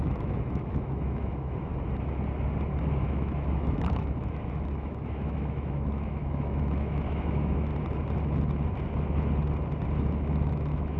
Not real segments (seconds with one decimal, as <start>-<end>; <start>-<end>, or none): 0.0-1.7; 2.8-7.7; 10.0-11.0